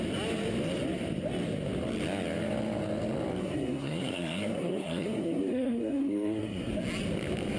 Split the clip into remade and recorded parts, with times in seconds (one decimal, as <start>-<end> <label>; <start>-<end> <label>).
0.0-3.4 recorded; 3.4-6.7 remade; 6.7-7.6 recorded